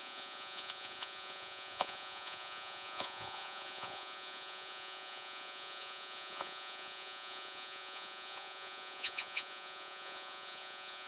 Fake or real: fake